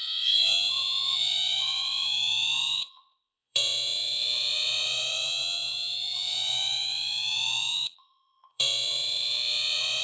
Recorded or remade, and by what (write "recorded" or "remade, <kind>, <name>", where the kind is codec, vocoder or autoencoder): remade, vocoder, Vocos